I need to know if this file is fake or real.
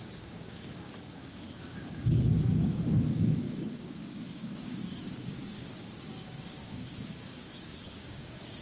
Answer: fake